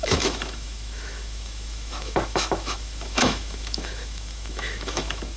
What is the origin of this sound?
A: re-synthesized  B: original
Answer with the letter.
A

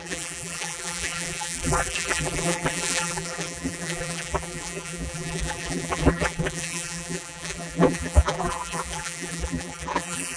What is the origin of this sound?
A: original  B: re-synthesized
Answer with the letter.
B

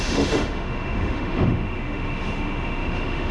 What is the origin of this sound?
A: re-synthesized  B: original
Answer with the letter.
A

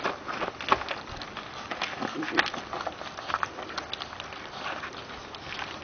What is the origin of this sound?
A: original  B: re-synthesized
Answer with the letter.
A